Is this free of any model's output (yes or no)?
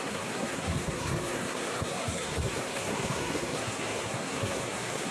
no